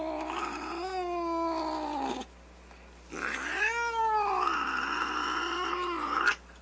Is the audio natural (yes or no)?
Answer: yes